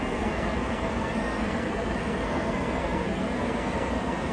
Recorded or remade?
remade